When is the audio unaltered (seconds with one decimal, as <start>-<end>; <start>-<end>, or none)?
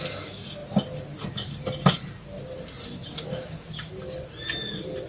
0.0-5.1